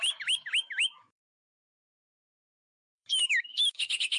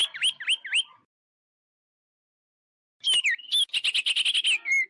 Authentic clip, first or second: second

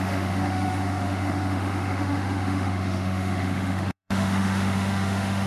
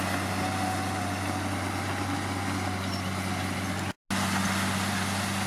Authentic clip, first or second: second